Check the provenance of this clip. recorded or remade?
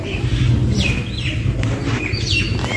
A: recorded